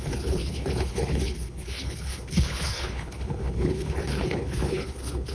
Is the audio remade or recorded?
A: remade